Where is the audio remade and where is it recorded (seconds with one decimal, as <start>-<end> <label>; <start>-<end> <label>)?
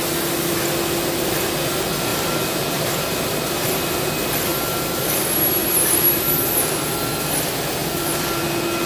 0.0-2.1 recorded; 2.1-4.1 remade; 4.1-4.5 recorded; 4.5-5.1 remade; 5.1-5.6 recorded; 5.6-6.7 remade; 6.7-7.8 recorded; 7.8-8.4 remade; 8.4-8.9 recorded